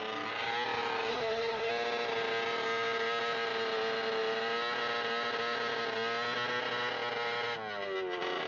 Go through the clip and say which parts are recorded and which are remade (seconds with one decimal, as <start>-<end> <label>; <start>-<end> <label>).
0.0-1.1 recorded; 1.1-1.7 remade; 1.7-8.5 recorded